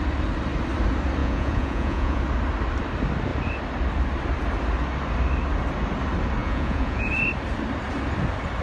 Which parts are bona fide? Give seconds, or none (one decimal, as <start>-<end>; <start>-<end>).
0.0-1.2; 2.2-6.4; 7.1-8.6